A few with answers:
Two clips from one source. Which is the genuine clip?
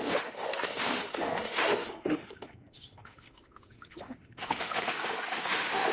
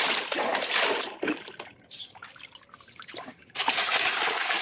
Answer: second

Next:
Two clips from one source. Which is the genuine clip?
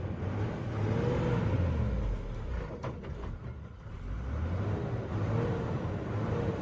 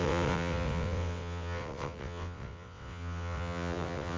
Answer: first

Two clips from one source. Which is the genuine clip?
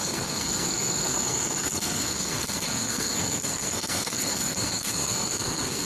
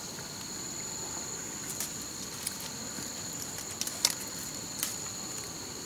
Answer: second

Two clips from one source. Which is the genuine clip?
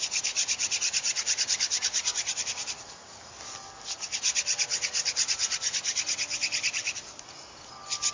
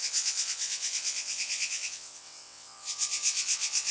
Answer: first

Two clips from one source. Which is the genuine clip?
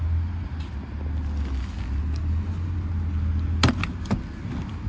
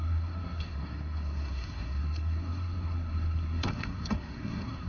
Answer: first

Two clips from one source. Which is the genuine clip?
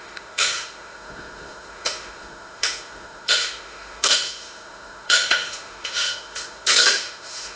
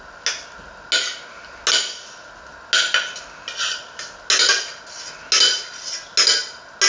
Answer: second